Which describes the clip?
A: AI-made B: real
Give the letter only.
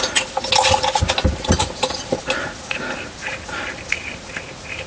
B